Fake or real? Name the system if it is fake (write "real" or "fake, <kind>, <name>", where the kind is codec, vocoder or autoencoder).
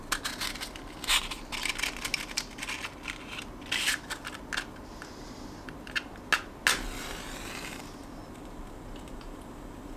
real